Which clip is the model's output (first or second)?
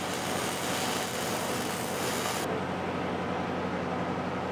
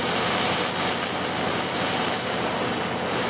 second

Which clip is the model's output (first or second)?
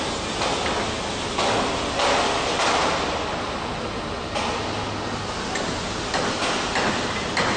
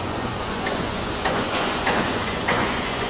second